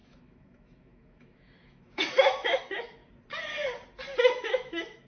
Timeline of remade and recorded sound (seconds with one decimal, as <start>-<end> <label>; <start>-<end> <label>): 0.0-3.0 remade; 3.0-4.2 recorded; 4.2-5.1 remade